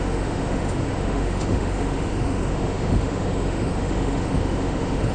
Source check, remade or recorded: remade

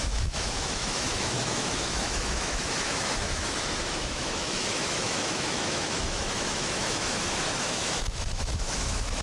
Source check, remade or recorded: remade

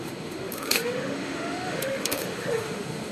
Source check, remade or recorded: remade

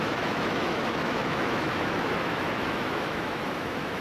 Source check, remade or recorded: remade